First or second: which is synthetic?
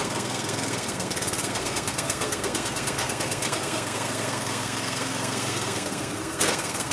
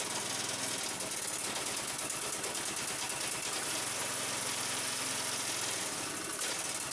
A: first